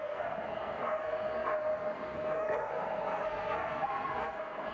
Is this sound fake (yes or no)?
yes